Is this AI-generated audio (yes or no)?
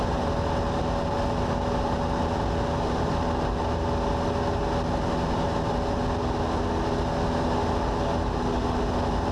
no